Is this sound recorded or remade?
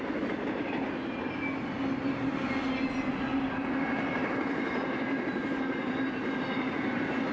recorded